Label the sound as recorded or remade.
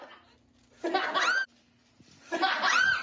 recorded